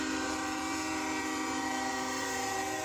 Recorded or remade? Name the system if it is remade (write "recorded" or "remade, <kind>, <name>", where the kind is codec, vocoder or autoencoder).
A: remade, vocoder, BigVGAN v2